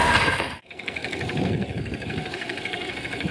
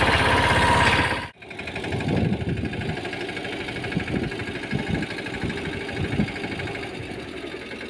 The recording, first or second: second